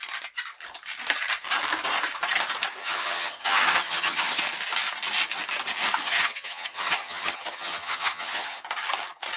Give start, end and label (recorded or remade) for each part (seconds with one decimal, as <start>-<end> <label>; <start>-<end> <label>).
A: 0.0-2.8 recorded; 2.8-4.4 remade; 4.4-6.0 recorded; 6.0-8.6 remade; 8.6-9.4 recorded